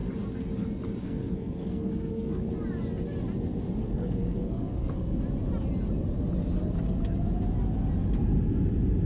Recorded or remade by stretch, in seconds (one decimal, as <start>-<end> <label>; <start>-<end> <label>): 0.0-1.0 recorded; 1.0-2.5 remade; 2.5-3.8 recorded; 3.8-5.2 remade; 5.2-9.1 recorded